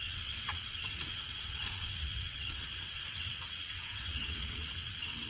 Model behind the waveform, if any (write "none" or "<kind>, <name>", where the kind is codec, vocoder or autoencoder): vocoder, WaveNeXt